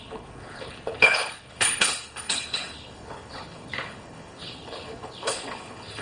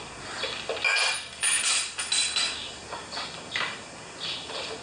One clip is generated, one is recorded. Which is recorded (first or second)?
second